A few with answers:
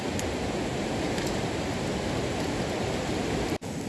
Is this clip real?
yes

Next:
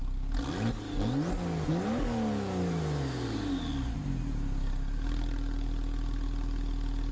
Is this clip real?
yes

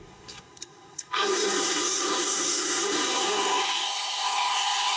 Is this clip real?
no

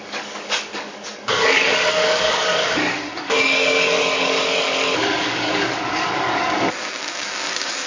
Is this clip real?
no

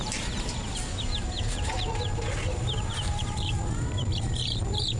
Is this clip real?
no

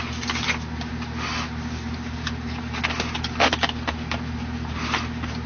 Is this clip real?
yes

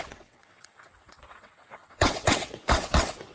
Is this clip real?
no